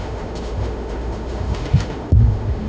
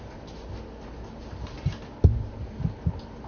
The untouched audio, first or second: second